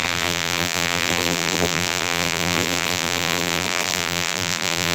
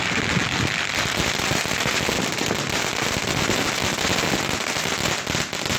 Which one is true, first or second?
second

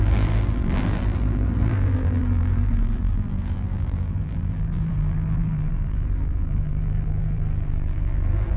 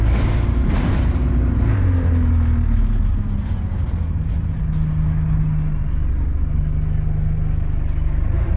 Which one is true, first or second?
second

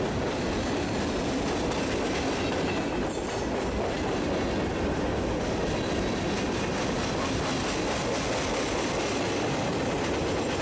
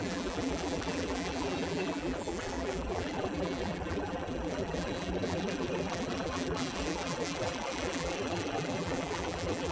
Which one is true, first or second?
first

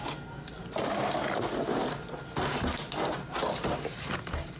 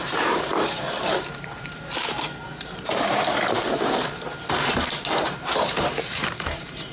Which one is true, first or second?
first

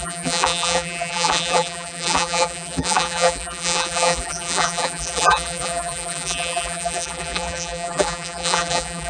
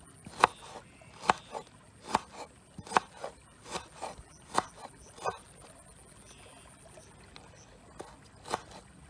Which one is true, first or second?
second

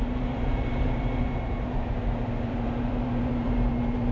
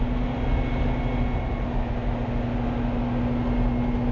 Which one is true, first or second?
second